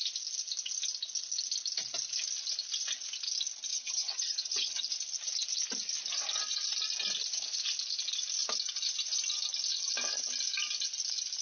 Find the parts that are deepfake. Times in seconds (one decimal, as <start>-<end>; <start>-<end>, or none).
3.7-4.8